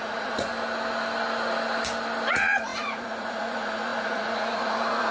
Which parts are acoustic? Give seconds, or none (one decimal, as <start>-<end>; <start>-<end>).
0.5-2.3